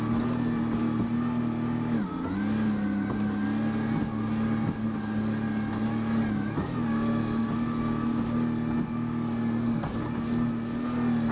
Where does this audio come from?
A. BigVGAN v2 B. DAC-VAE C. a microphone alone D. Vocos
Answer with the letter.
C